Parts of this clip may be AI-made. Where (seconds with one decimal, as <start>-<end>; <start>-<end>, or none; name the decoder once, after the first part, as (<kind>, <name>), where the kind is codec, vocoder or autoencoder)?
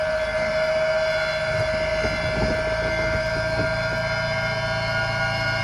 none